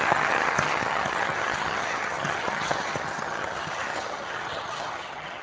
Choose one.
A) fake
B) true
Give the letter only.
A